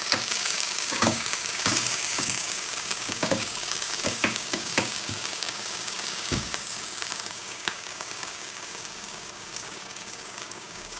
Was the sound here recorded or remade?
remade